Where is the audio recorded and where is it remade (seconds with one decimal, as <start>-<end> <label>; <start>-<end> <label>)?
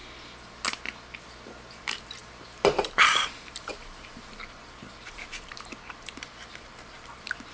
0.0-1.8 recorded; 1.8-7.5 remade